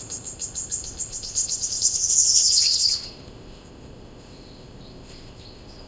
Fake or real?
fake